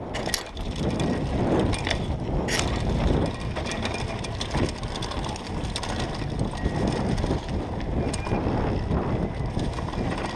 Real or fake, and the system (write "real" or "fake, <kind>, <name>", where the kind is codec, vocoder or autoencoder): real